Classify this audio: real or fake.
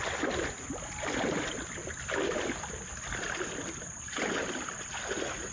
real